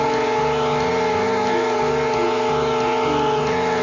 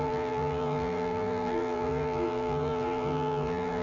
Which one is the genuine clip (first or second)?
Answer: first